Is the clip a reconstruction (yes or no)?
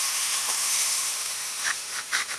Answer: yes